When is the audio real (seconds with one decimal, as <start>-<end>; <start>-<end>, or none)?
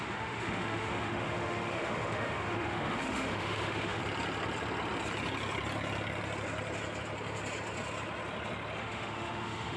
4.0-8.8